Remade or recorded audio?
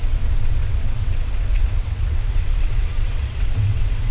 remade